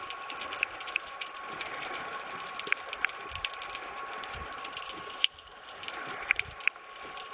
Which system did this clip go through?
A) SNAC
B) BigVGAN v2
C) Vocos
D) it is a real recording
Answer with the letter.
D